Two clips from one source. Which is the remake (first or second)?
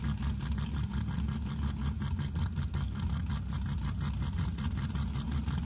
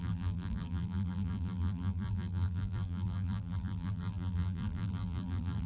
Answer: second